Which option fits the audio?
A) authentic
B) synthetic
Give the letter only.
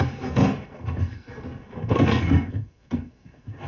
B